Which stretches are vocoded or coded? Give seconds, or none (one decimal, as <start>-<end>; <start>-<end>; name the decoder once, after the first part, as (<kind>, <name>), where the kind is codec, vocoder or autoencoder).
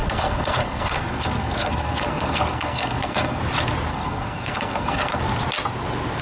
0.0-3.4 (codec, SNAC); 3.9-5.2